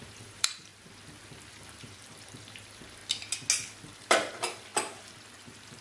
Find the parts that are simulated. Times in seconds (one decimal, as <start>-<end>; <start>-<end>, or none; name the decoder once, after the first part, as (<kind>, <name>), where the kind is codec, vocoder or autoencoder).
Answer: 0.0-0.7 (vocoder, BigVGAN v2); 1.5-3.0; 3.8-4.7